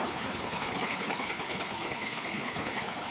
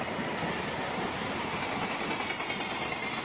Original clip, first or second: second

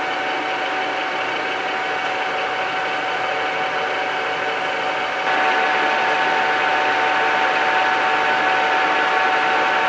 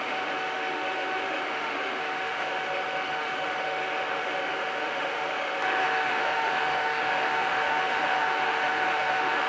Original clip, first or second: first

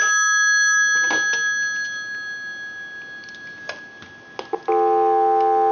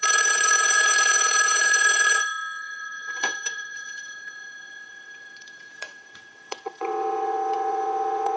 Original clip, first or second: first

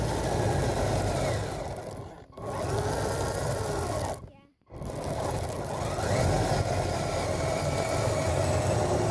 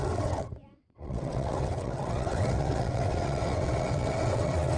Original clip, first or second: first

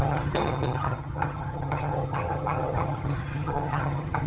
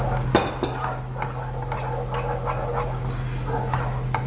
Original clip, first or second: second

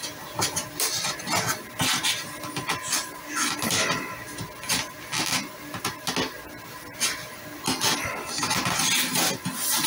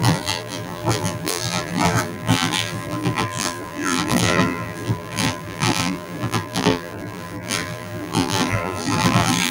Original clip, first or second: first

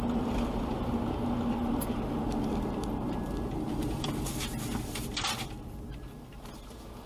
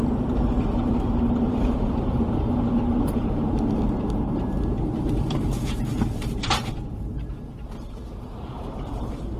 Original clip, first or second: first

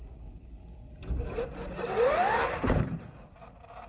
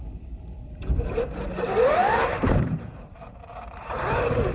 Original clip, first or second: first